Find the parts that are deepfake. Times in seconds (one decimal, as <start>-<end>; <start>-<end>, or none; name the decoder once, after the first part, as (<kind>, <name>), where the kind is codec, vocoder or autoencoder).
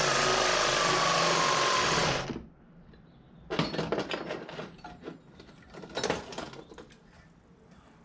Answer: none